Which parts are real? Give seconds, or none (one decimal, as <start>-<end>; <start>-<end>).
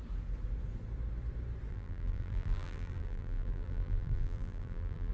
0.0-1.7